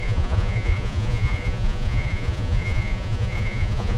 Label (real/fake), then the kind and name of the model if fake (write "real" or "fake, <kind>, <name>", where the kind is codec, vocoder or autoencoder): fake, vocoder, Vocos